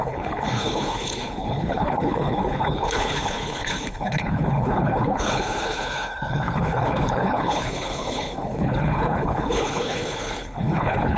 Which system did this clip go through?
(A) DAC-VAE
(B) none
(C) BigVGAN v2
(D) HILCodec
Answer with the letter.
D